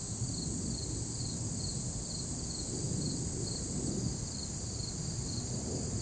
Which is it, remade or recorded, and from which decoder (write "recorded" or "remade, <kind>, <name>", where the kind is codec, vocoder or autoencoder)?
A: remade, vocoder, BigVGAN v2